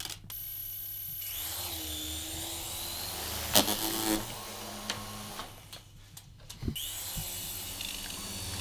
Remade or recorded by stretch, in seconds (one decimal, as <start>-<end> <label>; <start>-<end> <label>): 0.0-8.6 recorded